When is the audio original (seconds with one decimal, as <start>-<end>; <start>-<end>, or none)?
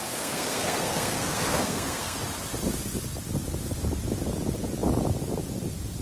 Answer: 2.2-6.0